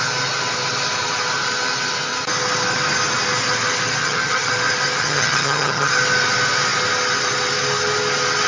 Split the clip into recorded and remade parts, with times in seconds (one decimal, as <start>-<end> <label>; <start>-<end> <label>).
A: 0.0-4.0 recorded; 4.0-4.5 remade; 4.5-5.0 recorded; 5.0-5.9 remade; 5.9-8.5 recorded